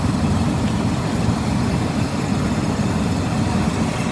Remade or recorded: recorded